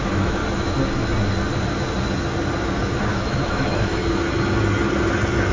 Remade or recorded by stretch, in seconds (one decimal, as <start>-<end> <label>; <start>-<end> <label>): 0.0-0.4 remade; 0.4-3.1 recorded; 3.1-4.0 remade; 4.0-5.5 recorded